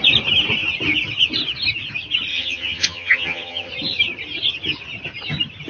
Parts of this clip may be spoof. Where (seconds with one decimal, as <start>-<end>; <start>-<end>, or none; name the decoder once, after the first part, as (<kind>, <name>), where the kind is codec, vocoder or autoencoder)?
2.3-3.7 (vocoder, HiFi-GAN)